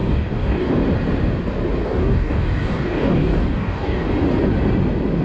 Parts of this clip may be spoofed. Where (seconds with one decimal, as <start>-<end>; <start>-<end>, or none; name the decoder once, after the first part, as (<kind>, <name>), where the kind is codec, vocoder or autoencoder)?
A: 0.0-0.7 (codec, DAC); 1.8-4.1